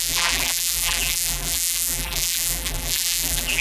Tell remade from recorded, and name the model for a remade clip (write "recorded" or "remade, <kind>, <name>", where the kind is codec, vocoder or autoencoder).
remade, vocoder, BigVGAN v2